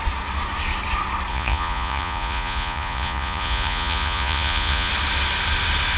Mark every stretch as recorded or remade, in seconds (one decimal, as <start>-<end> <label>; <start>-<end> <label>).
0.0-1.3 recorded; 1.3-4.9 remade; 4.9-6.0 recorded